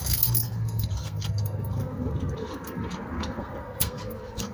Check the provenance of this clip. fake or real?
fake